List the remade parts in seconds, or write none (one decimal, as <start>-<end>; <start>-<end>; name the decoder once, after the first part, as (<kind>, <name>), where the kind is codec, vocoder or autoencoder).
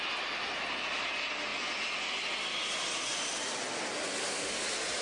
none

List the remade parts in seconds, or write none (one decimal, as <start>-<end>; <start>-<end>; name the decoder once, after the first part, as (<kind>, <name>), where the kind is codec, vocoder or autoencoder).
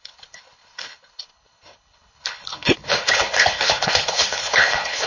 0.0-5.1 (codec, HILCodec)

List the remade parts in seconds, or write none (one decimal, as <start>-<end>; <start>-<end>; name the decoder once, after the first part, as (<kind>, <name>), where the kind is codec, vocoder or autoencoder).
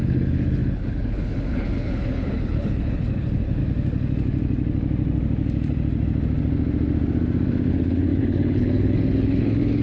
0.0-3.6 (codec, HILCodec); 7.7-9.8